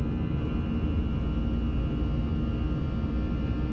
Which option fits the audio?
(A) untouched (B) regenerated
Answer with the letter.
A